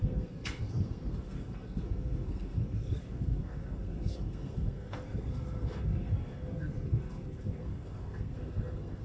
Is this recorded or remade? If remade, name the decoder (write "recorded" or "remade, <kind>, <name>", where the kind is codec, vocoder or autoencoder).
remade, codec, SNAC